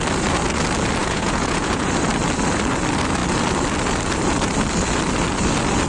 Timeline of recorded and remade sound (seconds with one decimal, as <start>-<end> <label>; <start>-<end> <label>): 0.0-1.0 recorded; 1.0-1.9 remade; 1.9-5.9 recorded